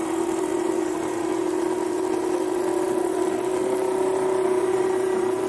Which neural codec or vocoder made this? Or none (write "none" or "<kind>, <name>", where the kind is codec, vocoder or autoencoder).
vocoder, BigVGAN v2